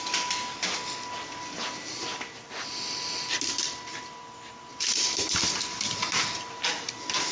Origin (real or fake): real